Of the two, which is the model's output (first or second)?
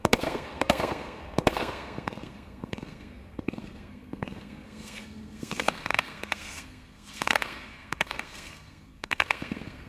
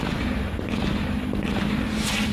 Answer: first